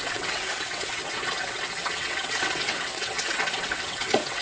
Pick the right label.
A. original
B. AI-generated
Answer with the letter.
B